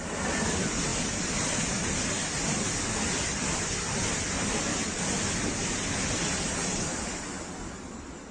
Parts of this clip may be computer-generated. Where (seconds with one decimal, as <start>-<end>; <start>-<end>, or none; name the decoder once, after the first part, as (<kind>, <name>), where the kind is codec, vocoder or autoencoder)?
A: none